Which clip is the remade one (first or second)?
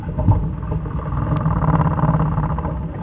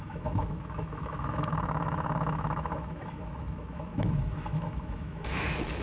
second